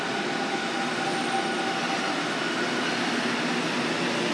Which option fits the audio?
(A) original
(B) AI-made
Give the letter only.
A